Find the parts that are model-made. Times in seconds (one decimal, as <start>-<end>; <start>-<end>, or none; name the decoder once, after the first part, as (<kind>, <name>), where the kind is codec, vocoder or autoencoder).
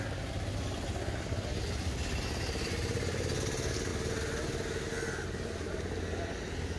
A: none